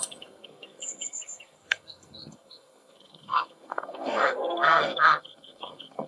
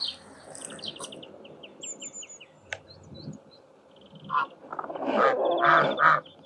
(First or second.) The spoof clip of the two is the first